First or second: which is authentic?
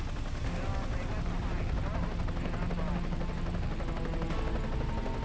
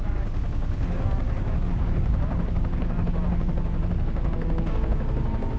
first